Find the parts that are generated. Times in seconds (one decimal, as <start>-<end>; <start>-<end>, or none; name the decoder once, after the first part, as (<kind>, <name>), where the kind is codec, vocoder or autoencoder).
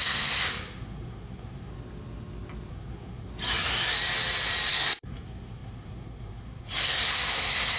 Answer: 0.0-1.7 (codec, SNAC); 2.7-3.3; 4.7-7.8